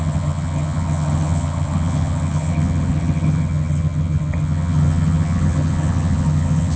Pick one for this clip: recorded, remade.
remade